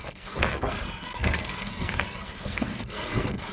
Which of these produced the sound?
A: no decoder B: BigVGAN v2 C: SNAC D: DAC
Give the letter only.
C